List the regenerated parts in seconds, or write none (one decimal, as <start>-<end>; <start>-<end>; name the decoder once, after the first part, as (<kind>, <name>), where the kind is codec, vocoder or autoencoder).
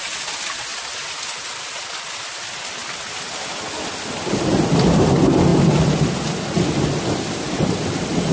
none